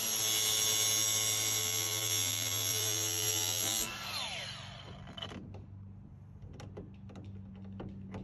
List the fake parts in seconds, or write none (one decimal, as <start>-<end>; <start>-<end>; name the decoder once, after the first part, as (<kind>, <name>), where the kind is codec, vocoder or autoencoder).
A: 1.6-3.9 (vocoder, BigVGAN v2)